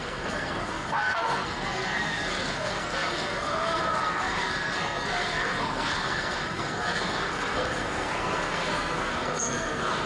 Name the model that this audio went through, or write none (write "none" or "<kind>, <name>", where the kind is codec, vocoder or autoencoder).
codec, SNAC